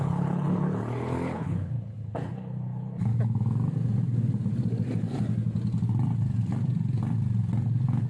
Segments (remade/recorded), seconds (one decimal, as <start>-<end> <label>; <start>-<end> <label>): 0.0-3.1 remade; 3.1-8.1 recorded